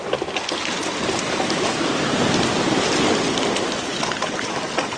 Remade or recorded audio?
recorded